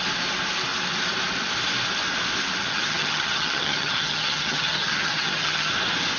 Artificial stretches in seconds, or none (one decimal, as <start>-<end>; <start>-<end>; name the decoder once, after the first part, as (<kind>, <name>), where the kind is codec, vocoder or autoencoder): 2.7-5.7 (vocoder, HiFi-GAN)